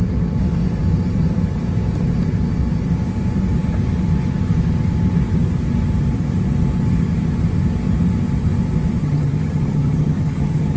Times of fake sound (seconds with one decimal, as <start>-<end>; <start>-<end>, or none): 9.0-10.8